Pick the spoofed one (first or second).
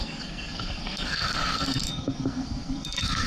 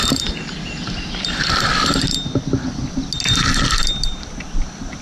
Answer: first